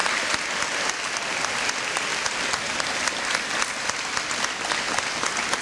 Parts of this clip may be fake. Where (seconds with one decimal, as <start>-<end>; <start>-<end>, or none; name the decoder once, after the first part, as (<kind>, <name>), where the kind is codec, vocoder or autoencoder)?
none